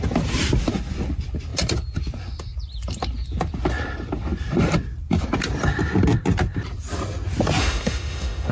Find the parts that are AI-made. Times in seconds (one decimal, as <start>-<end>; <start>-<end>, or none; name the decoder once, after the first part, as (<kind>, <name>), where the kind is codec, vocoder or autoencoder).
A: 7.6-8.5 (autoencoder, DAC-VAE)